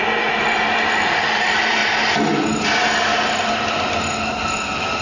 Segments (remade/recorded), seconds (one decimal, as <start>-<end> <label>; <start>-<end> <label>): 0.0-5.0 recorded